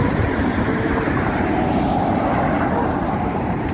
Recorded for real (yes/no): no